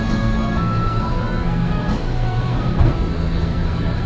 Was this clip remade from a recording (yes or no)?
yes